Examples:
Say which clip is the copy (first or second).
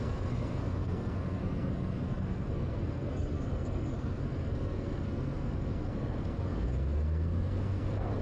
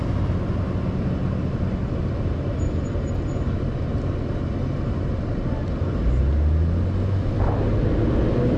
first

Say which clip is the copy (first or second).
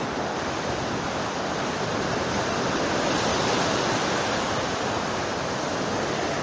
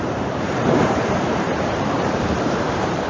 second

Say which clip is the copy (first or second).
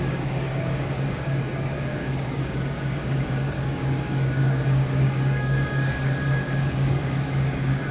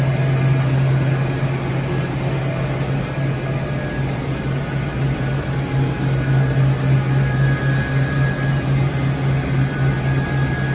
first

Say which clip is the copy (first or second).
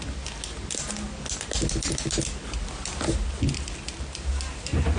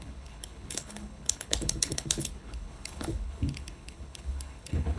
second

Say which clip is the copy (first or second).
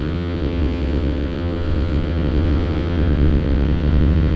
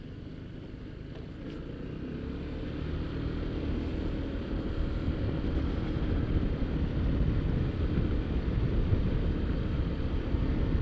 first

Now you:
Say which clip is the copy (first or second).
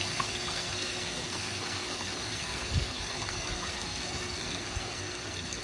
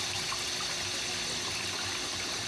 first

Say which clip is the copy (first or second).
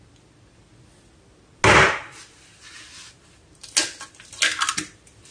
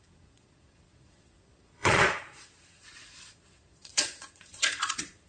second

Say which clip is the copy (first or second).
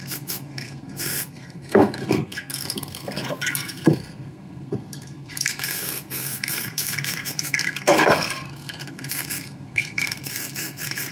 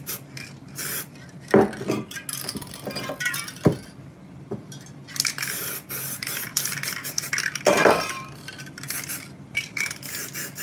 first